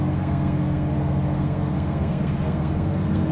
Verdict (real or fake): fake